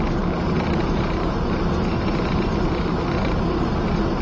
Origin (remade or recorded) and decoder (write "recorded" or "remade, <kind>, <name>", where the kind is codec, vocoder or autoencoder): recorded